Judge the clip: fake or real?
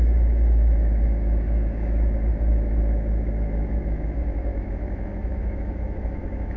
fake